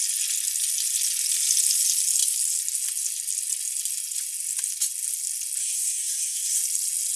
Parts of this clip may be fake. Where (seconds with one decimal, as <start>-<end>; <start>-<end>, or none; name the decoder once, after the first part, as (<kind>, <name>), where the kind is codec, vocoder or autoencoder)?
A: 5.6-6.6 (codec, SNAC)